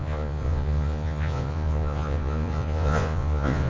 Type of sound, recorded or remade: remade